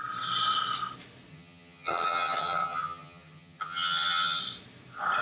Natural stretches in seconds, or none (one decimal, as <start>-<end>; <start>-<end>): 0.0-1.3; 4.4-5.2